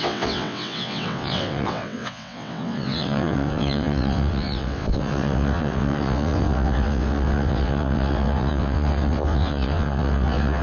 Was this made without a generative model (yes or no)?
no